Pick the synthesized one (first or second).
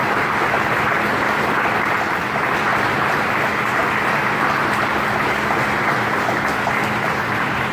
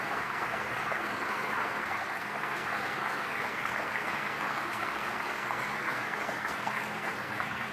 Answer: second